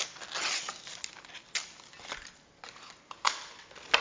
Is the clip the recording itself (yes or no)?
yes